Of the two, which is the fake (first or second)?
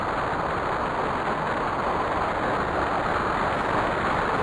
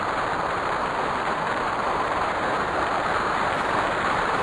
second